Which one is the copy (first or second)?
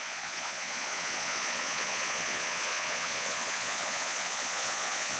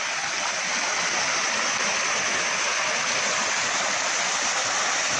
first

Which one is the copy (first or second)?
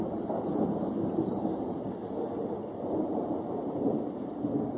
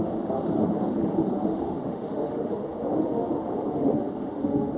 second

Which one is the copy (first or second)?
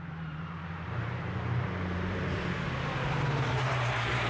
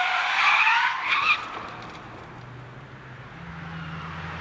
first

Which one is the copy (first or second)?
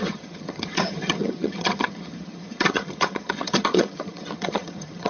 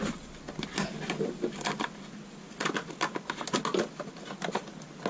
first